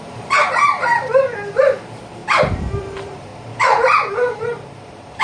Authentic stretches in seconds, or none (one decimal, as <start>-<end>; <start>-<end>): 2.2-2.8; 3.3-4.1